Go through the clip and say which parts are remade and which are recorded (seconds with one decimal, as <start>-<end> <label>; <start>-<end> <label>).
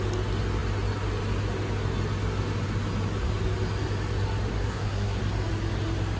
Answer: 0.0-4.5 recorded; 4.5-5.2 remade; 5.2-6.2 recorded